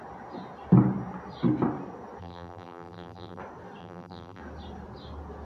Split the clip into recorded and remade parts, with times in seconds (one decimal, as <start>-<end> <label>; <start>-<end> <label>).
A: 0.0-2.2 recorded; 2.2-3.4 remade; 3.4-3.8 recorded; 3.8-4.4 remade; 4.4-5.4 recorded